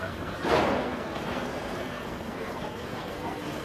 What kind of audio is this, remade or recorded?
remade